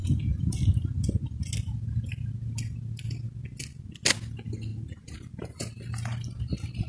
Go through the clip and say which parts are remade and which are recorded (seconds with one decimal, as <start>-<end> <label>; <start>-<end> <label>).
0.0-4.7 recorded; 4.7-5.7 remade; 5.7-6.9 recorded